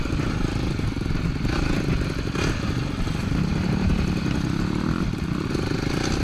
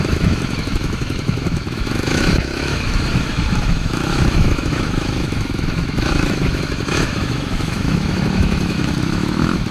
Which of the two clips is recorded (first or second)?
first